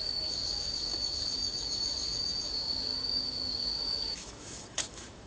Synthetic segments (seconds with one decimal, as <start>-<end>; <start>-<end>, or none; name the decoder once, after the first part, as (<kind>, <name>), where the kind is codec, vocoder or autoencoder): 0.0-5.3 (autoencoder, DAC-VAE)